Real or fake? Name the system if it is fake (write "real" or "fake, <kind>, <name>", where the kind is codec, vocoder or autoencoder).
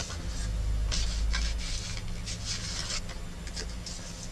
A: real